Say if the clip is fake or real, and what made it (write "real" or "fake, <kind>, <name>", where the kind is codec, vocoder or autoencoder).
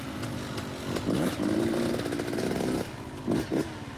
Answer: real